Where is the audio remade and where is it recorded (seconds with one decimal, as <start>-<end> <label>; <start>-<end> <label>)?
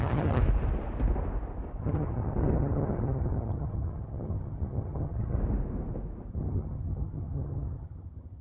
0.0-0.4 remade; 0.4-1.8 recorded; 1.8-5.4 remade; 5.4-6.3 recorded; 6.3-8.4 remade